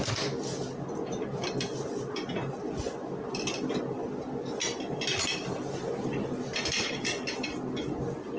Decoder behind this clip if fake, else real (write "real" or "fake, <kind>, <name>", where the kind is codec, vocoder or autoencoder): real